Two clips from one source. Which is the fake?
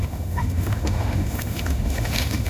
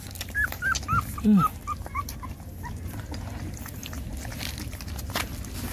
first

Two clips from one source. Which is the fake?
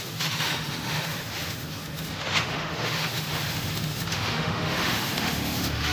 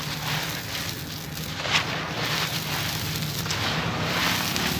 first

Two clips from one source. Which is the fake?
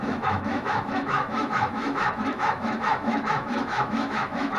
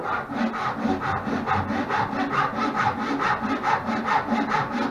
first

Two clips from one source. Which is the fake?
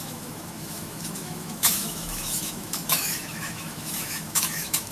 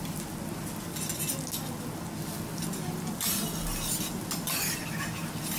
first